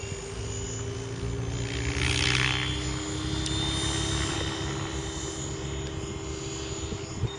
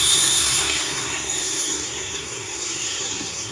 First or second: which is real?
first